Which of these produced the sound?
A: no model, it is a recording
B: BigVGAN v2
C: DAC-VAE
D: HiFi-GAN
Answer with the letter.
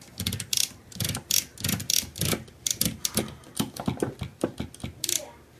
A